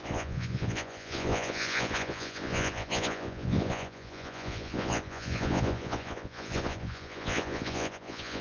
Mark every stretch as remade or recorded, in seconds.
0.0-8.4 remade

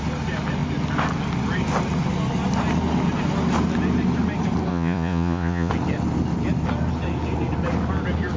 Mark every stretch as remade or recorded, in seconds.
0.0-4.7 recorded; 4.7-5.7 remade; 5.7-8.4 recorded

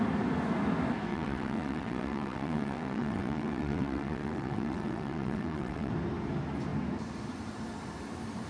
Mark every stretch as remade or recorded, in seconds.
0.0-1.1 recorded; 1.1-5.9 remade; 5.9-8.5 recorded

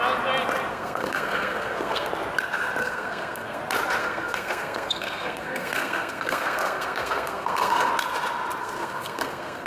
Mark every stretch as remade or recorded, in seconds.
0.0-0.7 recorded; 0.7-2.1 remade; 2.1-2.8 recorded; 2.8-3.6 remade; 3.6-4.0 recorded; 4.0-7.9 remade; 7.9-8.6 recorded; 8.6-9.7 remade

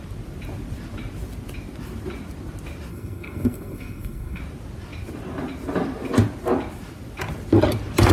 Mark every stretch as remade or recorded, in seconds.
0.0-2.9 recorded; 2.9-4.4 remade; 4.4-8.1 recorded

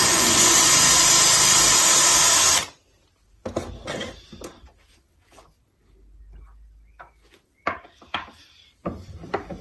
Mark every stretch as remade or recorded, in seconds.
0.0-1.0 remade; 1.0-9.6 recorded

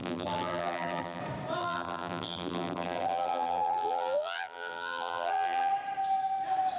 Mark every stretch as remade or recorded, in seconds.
0.0-1.2 remade; 1.2-1.6 recorded; 1.6-5.7 remade; 5.7-6.8 recorded